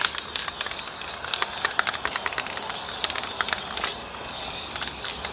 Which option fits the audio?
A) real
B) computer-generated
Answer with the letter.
A